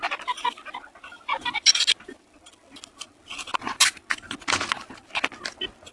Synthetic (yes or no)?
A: no